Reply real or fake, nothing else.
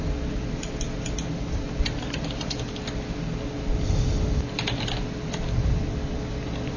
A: real